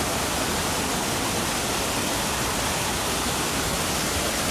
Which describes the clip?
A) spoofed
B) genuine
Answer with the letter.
B